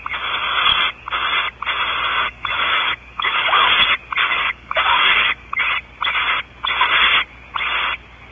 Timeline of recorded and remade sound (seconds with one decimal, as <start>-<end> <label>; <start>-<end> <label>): 0.0-2.1 recorded; 2.1-3.7 remade; 3.7-4.2 recorded; 4.2-5.6 remade; 5.6-8.3 recorded